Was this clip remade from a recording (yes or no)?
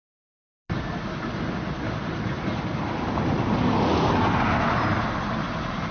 no